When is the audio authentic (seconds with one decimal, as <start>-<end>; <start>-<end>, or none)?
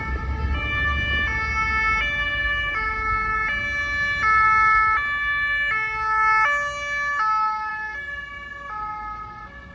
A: 0.0-9.7